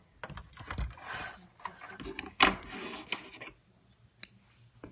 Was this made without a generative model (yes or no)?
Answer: yes